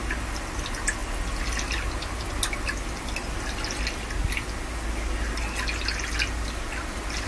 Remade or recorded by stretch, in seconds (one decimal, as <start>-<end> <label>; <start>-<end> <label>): 0.0-7.3 recorded